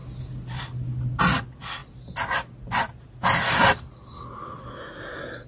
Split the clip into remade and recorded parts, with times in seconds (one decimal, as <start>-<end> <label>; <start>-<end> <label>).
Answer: 0.0-5.5 recorded